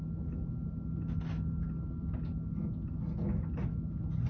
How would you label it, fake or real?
real